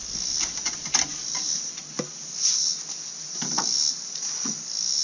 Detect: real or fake real